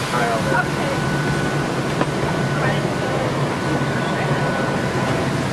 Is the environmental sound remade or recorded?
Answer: recorded